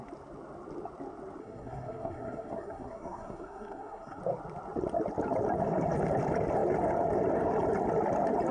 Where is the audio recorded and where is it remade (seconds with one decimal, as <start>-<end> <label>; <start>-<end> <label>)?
0.0-1.4 recorded; 1.4-4.2 remade; 4.2-8.5 recorded